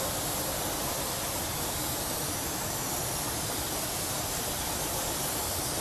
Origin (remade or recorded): remade